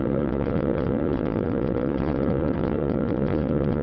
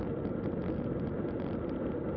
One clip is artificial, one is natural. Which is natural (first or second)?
second